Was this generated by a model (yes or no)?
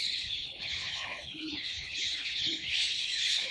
yes